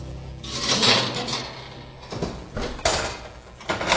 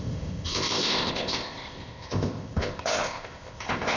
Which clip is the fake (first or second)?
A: second